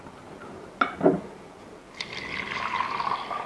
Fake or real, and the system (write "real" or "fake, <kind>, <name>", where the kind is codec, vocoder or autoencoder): real